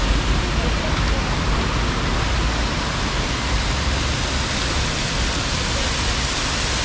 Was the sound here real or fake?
real